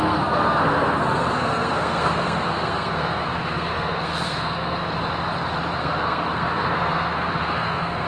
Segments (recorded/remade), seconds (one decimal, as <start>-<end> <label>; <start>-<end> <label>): 0.0-4.8 remade; 4.8-5.8 recorded; 5.8-8.1 remade